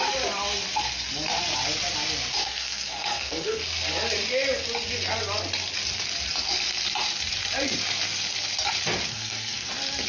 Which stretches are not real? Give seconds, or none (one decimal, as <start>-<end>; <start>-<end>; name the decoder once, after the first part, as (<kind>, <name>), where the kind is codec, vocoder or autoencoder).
2.4-3.6 (codec, SNAC); 9.1-9.7